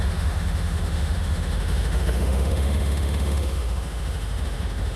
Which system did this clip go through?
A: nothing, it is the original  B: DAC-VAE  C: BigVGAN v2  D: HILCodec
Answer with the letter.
B